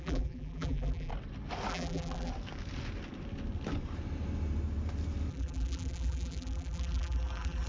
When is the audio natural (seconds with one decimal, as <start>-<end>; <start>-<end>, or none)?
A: 1.1-1.7; 2.3-5.3